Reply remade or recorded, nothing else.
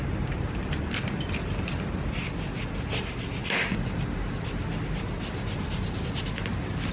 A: recorded